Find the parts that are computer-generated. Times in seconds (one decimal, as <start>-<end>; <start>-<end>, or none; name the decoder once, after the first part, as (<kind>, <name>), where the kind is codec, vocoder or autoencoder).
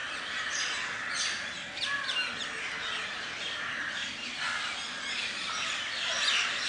none